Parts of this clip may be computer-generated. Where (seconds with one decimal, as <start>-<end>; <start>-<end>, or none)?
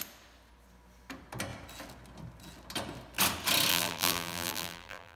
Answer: 3.7-5.2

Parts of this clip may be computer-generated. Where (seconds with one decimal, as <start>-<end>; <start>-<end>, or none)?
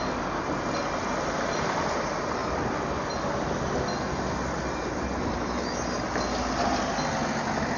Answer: none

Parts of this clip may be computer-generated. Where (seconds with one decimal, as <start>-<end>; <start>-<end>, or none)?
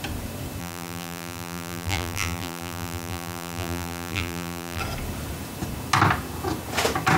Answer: 0.6-4.8